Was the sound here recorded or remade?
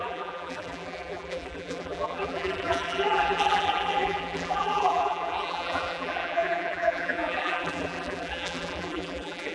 remade